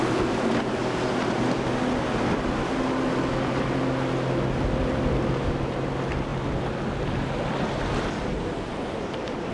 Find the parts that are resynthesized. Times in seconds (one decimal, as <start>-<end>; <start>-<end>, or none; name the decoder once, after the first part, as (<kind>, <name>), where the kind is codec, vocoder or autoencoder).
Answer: none

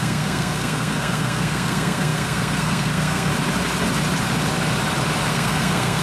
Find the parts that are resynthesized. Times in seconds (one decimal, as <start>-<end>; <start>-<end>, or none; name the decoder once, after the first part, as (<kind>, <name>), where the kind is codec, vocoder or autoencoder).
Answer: 0.0-3.3 (codec, SNAC); 5.3-6.0

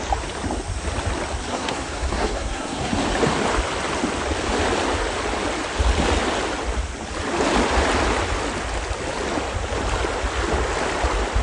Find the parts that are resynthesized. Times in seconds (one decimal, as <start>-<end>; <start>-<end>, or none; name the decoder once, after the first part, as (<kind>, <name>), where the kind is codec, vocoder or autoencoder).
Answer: 1.5-2.9 (codec, SNAC)

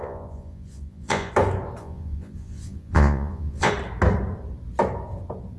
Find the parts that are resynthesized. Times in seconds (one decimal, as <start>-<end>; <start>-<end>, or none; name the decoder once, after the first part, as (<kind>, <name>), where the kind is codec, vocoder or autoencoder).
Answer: 0.0-1.3 (vocoder, Vocos); 1.8-3.7